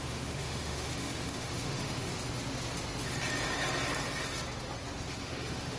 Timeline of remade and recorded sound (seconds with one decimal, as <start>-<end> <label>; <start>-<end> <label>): 0.0-2.1 remade; 2.1-5.2 recorded; 5.2-5.8 remade